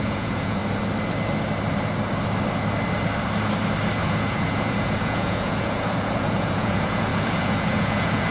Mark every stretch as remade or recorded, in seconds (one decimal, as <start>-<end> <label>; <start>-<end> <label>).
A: 0.0-0.6 remade; 0.6-4.0 recorded; 4.0-8.3 remade